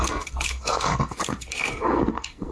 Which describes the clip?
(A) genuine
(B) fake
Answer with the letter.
B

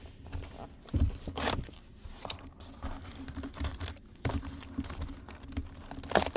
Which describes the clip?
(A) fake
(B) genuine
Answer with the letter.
B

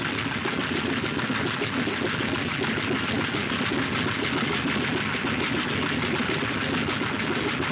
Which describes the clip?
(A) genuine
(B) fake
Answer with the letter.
A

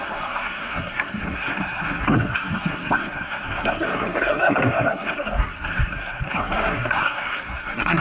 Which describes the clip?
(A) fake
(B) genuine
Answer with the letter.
A